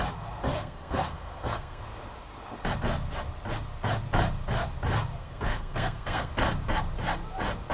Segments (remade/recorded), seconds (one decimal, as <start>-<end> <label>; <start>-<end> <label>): 0.0-0.5 recorded; 0.5-1.8 remade; 1.8-5.2 recorded; 5.2-6.3 remade; 6.3-7.7 recorded